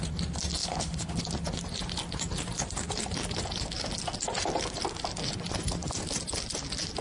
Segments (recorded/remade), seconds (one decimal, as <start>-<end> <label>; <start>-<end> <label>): 0.0-0.6 recorded; 0.6-1.2 remade; 1.2-7.0 recorded